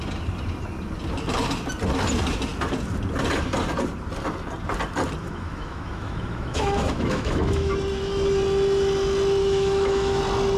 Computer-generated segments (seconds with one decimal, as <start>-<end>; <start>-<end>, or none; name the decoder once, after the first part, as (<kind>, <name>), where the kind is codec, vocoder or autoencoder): 5.2-7.7 (autoencoder, DAC-VAE); 9.4-10.2